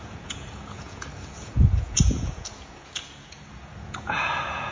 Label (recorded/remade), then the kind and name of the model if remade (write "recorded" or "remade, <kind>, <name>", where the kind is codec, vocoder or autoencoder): remade, vocoder, Vocos